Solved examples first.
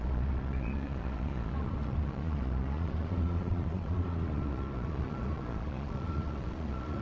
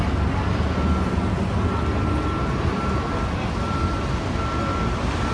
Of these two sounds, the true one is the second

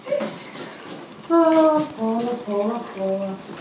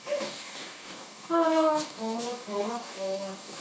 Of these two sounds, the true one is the first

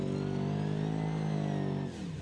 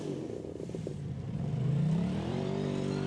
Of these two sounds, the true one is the first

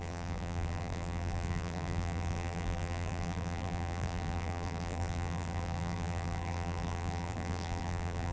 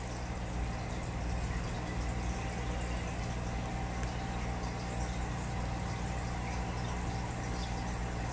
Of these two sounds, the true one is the second